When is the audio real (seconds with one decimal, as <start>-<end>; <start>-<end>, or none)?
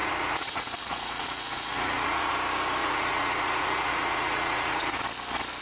2.3-2.8; 5.0-5.6